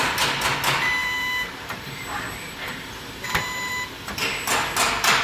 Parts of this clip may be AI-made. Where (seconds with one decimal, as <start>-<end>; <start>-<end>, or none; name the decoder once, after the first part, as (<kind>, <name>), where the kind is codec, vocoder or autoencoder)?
1.0-3.9 (vocoder, BigVGAN v2)